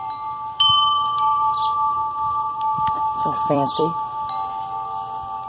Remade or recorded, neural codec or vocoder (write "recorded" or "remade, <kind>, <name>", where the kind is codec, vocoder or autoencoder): remade, vocoder, BigVGAN v2